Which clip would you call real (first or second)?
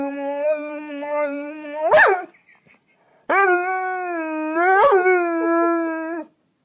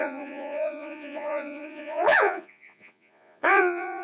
first